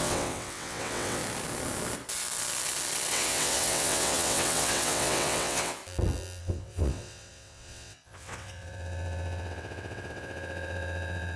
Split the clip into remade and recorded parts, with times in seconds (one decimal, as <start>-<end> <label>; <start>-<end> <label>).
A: 0.0-1.2 remade; 1.2-3.1 recorded; 3.1-5.8 remade; 5.8-6.4 recorded; 6.4-11.4 remade